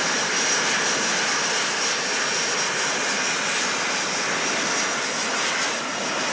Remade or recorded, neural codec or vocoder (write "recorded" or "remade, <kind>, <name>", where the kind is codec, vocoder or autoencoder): recorded